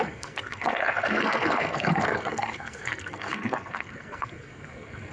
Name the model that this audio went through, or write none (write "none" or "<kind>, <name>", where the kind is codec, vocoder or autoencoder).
codec, SNAC